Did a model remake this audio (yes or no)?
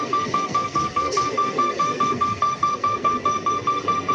yes